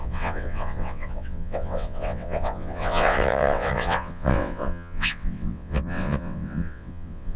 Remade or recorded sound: remade